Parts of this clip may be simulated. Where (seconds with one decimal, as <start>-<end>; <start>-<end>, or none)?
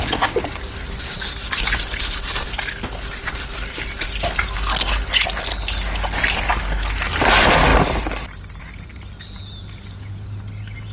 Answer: none